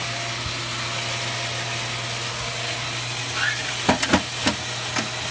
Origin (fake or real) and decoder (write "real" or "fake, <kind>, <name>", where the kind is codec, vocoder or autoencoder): real